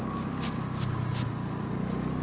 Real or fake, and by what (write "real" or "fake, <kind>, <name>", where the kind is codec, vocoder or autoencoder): real